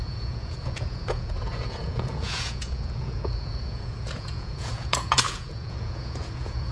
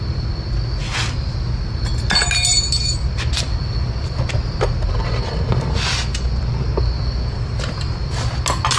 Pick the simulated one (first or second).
first